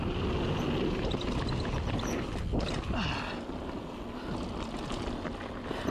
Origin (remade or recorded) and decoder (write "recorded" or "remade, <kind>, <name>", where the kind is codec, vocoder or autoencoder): recorded